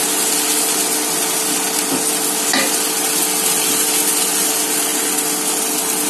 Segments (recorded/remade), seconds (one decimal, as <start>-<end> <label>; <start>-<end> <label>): 0.0-6.1 recorded